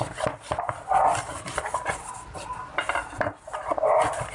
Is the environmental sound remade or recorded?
recorded